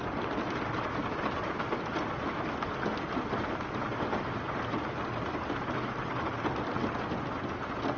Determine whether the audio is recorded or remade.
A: recorded